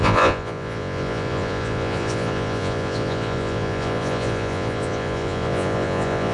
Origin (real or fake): fake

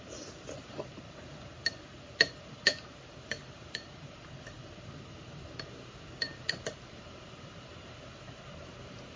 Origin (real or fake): fake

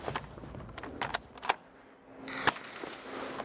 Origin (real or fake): real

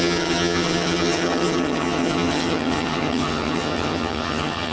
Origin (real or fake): fake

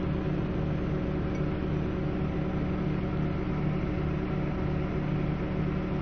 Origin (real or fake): real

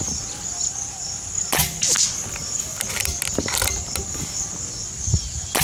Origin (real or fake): real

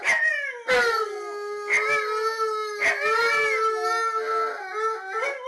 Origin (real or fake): real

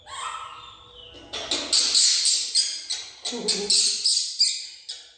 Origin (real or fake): real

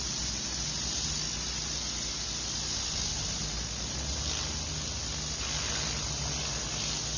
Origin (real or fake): real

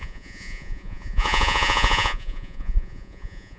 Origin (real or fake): fake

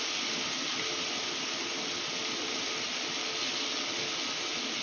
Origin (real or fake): real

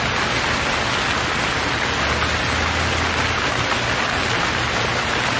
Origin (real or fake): real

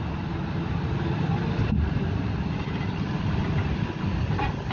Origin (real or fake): real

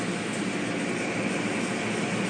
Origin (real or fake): real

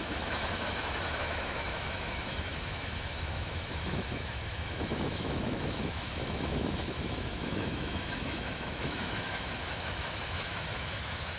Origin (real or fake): fake